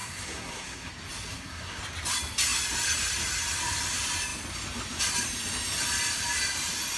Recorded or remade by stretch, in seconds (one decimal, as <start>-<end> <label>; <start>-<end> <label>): 0.0-0.9 remade; 0.9-1.3 recorded; 1.3-1.8 remade; 1.8-7.0 recorded